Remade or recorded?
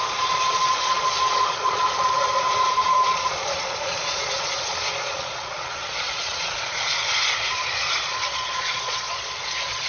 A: remade